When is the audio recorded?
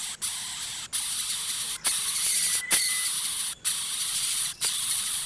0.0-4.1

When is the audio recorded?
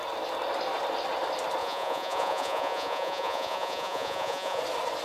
0.0-1.6; 4.6-5.0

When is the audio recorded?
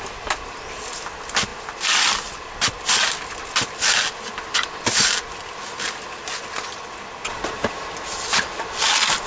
0.0-9.3